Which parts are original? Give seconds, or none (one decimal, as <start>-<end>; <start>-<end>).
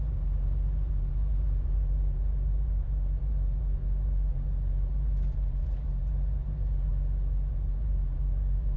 6.9-7.5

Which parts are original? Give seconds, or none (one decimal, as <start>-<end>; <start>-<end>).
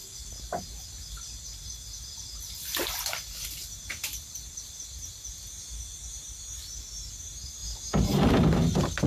0.6-9.1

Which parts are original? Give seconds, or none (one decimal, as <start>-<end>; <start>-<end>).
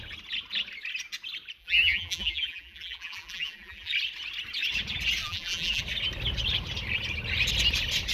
0.0-1.6; 3.9-5.2; 5.8-8.1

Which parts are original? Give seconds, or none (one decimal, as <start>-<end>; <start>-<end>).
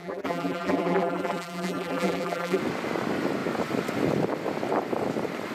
2.6-5.5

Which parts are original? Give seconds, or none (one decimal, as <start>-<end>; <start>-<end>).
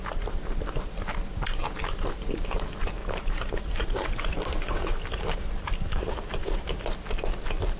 0.0-3.0; 6.6-7.8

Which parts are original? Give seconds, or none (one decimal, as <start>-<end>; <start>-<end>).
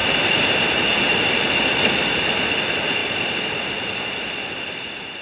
0.7-3.0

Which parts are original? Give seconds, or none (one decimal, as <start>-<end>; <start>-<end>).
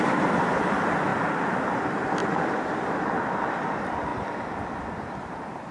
0.0-1.1; 1.6-2.2; 2.9-4.1; 5.2-5.7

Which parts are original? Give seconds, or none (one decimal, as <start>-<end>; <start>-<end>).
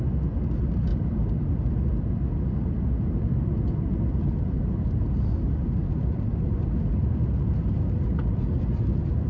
0.0-0.9; 2.1-4.2; 8.8-9.3